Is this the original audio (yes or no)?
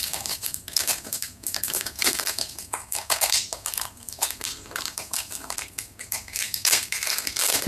no